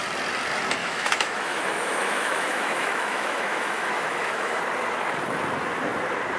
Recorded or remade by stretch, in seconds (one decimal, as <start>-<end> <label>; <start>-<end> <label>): 0.0-0.8 recorded; 0.8-4.6 remade; 4.6-6.4 recorded